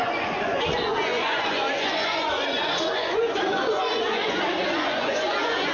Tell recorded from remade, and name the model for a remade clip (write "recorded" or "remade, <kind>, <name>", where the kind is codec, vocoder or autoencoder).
remade, vocoder, Vocos